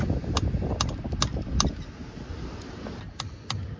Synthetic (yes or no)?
no